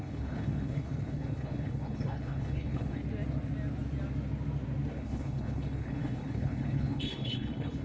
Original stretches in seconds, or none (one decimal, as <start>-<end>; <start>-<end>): 3.0-4.9